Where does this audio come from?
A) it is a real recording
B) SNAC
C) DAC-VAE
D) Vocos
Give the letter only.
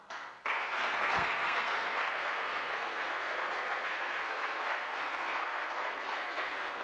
B